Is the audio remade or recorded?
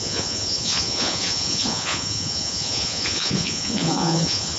remade